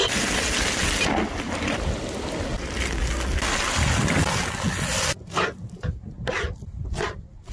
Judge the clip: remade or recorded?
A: recorded